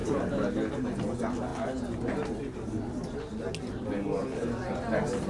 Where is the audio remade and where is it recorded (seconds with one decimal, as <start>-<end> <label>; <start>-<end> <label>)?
0.0-0.6 remade; 0.6-5.3 recorded